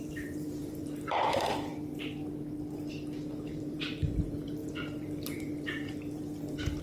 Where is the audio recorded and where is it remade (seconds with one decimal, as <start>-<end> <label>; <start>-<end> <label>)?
0.0-1.7 remade; 1.7-3.5 recorded; 3.5-6.8 remade